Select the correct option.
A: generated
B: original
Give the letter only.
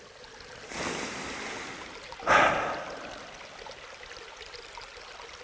B